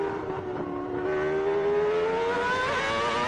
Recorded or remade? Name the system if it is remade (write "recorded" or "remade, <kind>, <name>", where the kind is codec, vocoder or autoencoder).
recorded